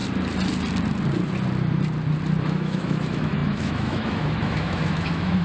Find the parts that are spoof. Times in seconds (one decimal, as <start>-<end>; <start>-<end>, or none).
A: 2.4-5.4